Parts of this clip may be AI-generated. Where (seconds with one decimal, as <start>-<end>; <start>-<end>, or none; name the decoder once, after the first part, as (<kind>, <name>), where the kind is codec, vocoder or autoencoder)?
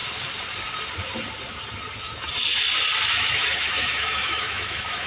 3.1-5.1 (autoencoder, DAC-VAE)